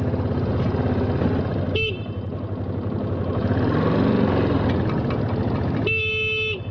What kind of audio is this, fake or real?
real